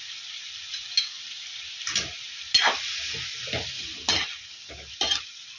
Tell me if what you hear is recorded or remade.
recorded